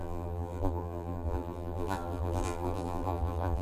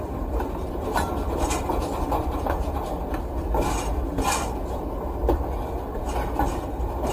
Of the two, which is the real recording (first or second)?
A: second